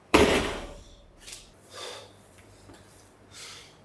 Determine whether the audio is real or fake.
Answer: fake